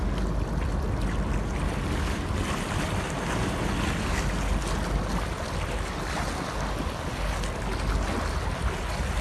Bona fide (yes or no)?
yes